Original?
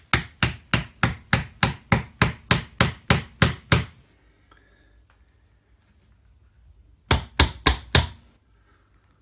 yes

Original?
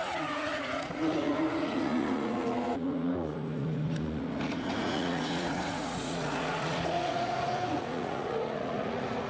no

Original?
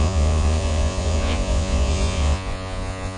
no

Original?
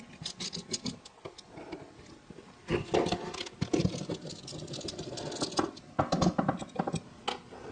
yes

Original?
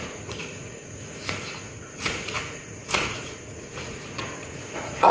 no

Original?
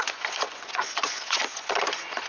no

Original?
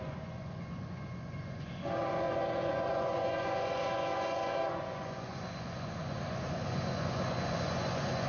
no